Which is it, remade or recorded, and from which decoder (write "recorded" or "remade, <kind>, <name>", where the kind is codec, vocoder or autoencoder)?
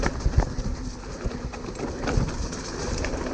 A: recorded